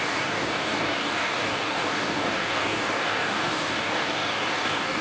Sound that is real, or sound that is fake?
fake